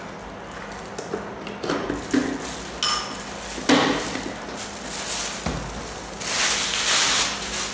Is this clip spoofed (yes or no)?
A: no